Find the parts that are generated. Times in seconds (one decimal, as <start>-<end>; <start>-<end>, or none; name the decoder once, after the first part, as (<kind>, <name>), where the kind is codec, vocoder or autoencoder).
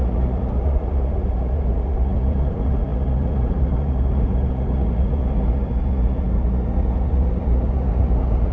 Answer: 0.0-8.5 (vocoder, Vocos)